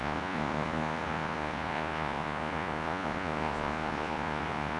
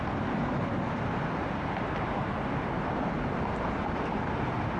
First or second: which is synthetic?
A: first